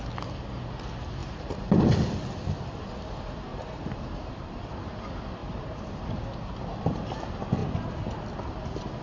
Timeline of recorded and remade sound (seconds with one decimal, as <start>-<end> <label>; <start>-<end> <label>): 0.0-1.2 recorded; 1.2-1.9 remade; 1.9-3.5 recorded; 3.5-4.7 remade; 4.7-5.4 recorded; 5.4-6.2 remade; 6.2-9.0 recorded